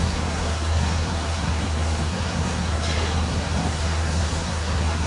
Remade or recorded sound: remade